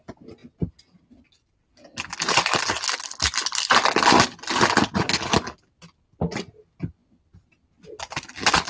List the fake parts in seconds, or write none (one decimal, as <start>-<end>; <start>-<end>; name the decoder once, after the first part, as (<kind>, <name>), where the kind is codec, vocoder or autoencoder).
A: none